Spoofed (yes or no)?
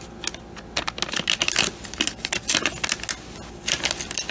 no